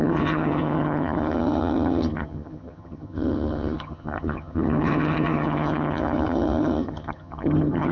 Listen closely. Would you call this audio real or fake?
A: fake